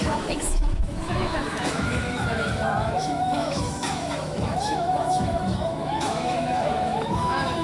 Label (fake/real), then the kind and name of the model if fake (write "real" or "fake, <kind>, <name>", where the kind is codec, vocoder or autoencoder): fake, autoencoder, DAC-VAE